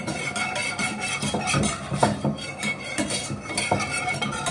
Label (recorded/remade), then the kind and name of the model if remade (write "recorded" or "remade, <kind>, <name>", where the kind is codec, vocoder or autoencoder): remade, vocoder, BigVGAN v2